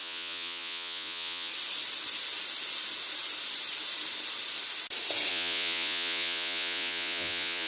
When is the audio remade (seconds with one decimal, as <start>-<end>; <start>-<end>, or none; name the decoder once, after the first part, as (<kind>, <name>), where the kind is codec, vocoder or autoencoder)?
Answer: 0.0-1.5 (vocoder, Vocos); 5.3-7.7